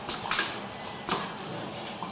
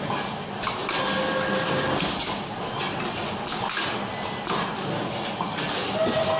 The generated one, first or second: first